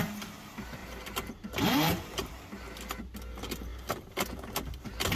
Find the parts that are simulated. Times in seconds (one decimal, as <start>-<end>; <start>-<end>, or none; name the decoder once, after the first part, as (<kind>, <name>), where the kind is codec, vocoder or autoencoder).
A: 0.8-2.3 (vocoder, BigVGAN v2)